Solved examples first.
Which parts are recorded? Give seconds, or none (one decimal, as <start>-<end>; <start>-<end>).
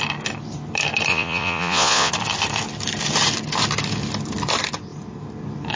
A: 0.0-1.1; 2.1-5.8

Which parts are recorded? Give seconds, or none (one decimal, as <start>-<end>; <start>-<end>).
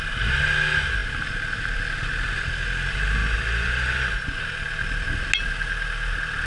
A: 0.0-6.5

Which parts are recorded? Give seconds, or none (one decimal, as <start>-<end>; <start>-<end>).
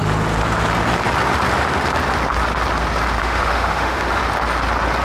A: 0.0-3.2; 4.2-5.0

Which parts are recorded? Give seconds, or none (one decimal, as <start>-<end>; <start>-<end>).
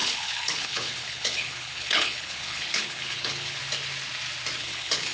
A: 3.6-4.6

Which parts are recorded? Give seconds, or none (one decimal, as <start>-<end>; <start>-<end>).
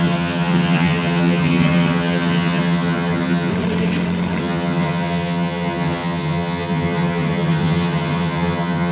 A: 3.5-4.4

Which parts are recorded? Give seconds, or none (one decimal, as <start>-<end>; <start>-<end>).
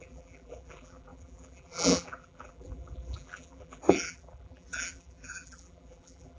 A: none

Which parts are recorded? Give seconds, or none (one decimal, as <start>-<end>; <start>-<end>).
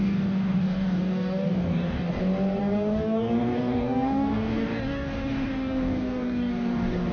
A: 2.1-2.6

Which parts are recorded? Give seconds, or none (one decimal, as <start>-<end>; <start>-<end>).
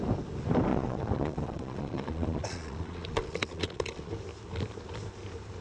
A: 0.0-0.7; 4.1-5.6